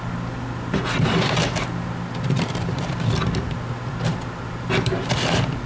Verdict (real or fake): real